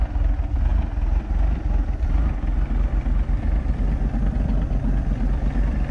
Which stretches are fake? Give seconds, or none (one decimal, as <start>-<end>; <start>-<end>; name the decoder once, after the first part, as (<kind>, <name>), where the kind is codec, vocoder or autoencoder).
none